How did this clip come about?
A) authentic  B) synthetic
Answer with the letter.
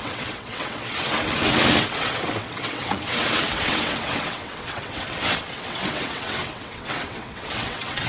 B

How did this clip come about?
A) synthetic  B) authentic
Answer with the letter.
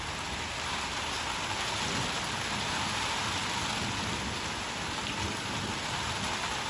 B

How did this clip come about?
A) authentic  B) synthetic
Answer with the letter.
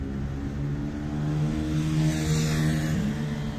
A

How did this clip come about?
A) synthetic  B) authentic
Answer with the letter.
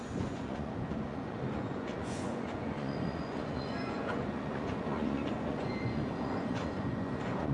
A